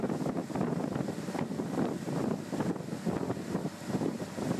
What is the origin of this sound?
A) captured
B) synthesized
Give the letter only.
B